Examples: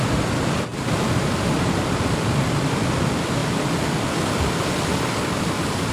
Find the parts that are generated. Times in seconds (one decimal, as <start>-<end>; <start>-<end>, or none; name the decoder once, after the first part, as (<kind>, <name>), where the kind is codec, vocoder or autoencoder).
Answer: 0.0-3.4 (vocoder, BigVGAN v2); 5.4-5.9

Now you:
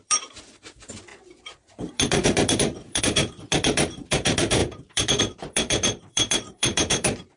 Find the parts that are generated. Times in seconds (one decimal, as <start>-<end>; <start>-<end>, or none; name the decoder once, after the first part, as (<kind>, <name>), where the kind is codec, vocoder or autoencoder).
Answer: 0.0-7.4 (vocoder, BigVGAN v2)

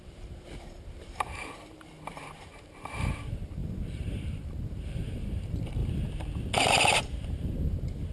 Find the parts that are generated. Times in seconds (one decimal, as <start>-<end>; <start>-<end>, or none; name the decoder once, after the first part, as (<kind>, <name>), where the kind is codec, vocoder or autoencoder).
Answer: 0.0-5.8 (vocoder, BigVGAN v2); 6.7-8.1

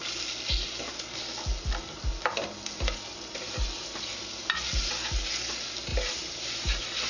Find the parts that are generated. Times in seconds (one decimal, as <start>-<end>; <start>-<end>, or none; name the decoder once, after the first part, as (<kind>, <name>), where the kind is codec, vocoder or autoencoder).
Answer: none